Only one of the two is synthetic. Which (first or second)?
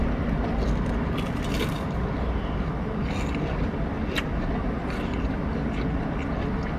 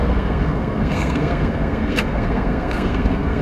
second